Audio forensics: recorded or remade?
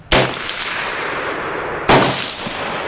recorded